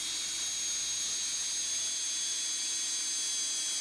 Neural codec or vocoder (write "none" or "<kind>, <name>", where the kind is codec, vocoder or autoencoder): none